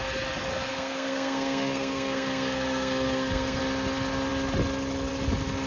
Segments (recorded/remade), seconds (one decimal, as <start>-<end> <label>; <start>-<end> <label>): 0.0-0.7 recorded; 0.7-3.6 remade; 3.6-5.7 recorded